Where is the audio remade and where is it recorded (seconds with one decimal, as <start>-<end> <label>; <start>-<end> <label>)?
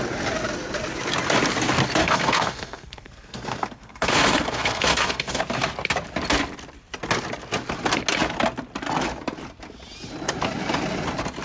0.0-2.0 recorded; 2.0-5.4 remade; 5.4-11.4 recorded